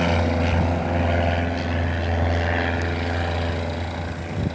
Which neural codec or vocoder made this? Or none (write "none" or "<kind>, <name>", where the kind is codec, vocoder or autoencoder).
none